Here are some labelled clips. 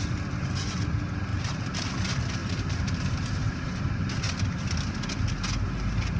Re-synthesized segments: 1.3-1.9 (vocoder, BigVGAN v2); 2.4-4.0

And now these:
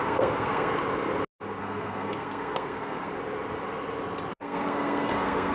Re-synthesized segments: 0.0-0.8 (codec, SNAC); 1.6-3.1; 4.3-5.5

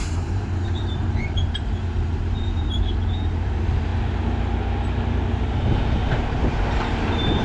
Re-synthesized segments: 0.0-3.9 (vocoder, BigVGAN v2); 6.1-7.4

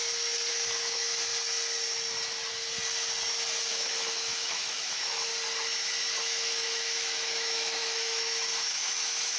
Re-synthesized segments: 0.5-1.3 (autoencoder, DAC-VAE); 3.7-5.3; 6.2-9.4

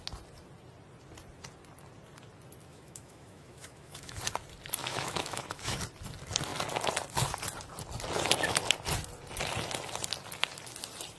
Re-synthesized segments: 2.7-4.2 (autoencoder, DAC-VAE); 4.8-5.8